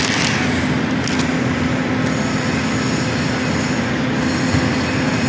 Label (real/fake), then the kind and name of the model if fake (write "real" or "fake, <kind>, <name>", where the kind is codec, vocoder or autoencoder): real